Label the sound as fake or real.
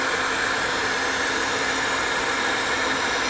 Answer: real